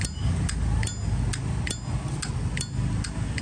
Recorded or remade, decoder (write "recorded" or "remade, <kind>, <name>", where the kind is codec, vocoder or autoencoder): recorded